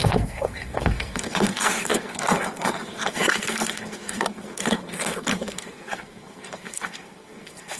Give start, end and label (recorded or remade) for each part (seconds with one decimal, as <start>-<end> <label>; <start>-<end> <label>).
0.0-7.8 remade